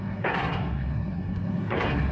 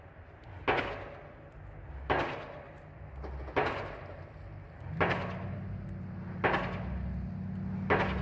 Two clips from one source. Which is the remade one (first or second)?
first